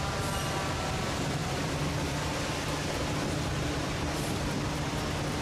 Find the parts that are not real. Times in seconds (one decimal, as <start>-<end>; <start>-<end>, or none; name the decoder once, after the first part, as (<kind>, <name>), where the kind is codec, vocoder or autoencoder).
1.4-4.6 (vocoder, BigVGAN v2)

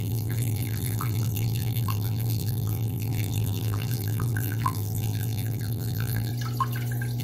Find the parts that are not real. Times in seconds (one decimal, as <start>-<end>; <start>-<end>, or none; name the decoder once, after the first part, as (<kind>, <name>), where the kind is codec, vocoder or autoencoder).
0.0-6.3 (vocoder, BigVGAN v2)

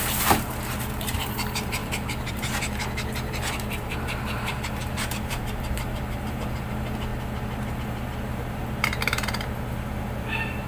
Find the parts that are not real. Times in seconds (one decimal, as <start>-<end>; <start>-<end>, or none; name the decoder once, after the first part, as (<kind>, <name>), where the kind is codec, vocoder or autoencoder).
0.0-7.1 (vocoder, BigVGAN v2); 7.7-10.7

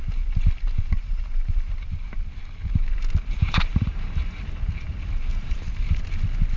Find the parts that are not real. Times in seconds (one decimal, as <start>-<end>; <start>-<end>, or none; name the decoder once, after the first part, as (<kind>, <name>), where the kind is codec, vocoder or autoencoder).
3.4-4.4 (vocoder, BigVGAN v2); 5.3-6.0

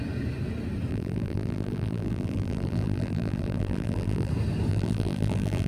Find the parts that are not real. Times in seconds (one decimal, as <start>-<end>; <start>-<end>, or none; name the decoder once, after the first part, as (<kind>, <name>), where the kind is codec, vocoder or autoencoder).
0.9-4.3 (vocoder, BigVGAN v2); 4.7-5.7

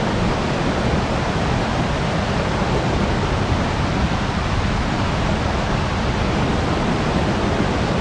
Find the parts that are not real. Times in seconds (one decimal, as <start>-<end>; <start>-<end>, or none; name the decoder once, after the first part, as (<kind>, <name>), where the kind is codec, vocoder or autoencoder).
none

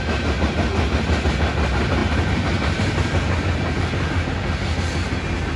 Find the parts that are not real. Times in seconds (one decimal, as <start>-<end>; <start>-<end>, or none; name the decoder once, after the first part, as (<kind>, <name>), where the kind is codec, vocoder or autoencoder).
none

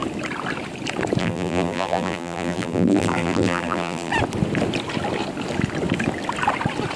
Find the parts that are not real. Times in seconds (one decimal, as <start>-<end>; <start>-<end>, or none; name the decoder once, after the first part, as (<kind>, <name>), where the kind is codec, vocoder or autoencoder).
1.2-4.1 (vocoder, BigVGAN v2)